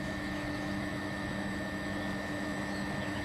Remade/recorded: remade